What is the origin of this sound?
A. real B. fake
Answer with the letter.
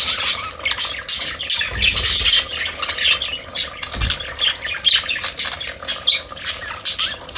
A